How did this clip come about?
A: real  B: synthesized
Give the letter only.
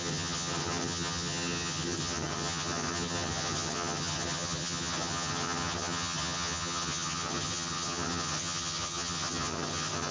B